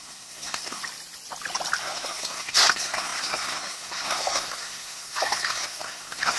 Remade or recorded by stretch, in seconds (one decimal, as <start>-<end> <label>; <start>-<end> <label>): 0.0-0.8 remade; 0.8-1.8 recorded; 1.8-6.4 remade